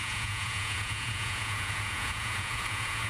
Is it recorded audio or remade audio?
remade